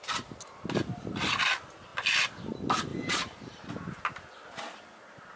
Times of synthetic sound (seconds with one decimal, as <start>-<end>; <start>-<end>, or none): 2.9-3.7